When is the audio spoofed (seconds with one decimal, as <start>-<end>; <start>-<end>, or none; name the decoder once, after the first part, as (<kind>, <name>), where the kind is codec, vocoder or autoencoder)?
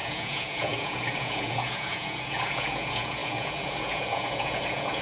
0.0-5.0 (vocoder, Vocos)